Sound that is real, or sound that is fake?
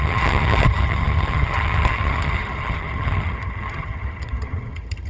fake